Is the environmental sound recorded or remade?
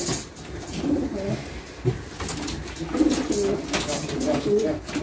recorded